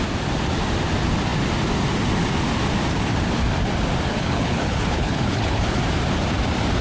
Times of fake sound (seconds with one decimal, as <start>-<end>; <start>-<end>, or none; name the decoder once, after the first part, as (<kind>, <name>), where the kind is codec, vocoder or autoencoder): 4.1-5.8 (codec, HILCodec)